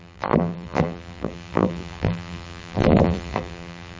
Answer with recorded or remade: remade